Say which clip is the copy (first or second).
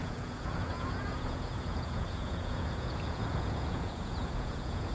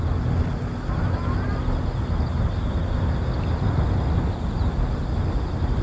first